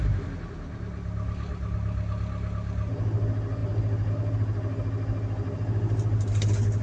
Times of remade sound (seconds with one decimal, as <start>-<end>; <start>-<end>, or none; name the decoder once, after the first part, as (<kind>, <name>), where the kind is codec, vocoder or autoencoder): none